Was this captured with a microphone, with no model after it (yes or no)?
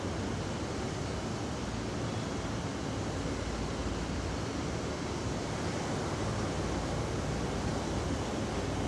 yes